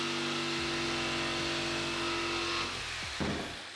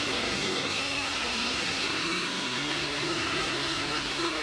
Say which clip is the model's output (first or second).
second